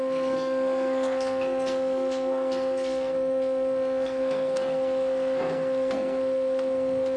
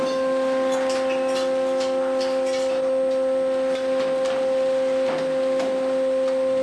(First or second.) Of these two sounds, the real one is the second